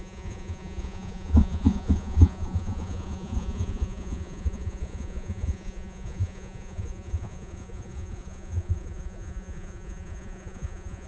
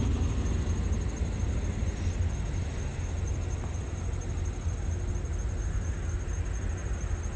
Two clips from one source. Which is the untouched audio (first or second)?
second